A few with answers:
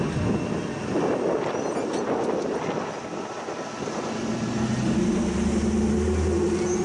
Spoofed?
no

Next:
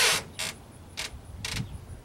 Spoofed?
no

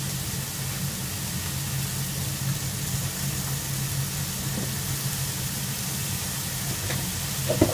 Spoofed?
no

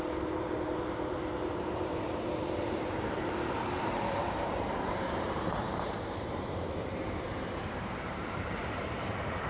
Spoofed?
yes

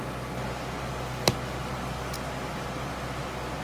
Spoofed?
no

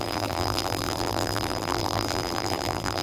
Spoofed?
yes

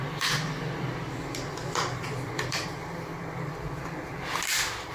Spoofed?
yes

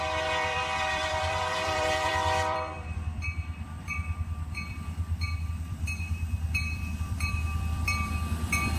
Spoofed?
yes